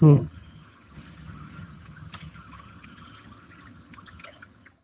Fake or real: fake